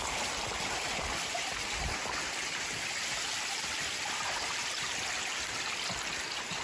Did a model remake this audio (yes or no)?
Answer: no